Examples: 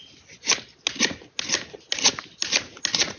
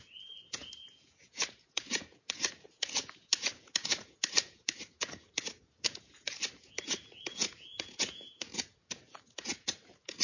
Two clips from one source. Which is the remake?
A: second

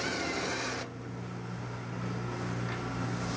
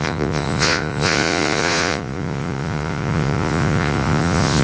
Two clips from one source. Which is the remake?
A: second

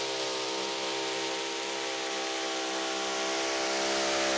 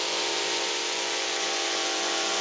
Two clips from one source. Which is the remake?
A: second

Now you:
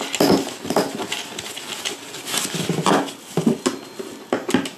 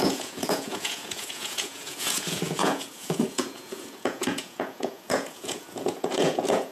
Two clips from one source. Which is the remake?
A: second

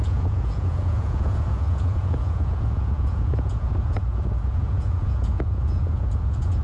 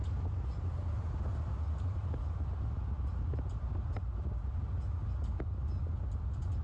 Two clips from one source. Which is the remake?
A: first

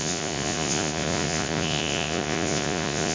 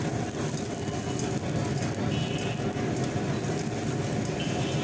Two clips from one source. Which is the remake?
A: first